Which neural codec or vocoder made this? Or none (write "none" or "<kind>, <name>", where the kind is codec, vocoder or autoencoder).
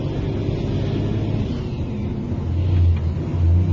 none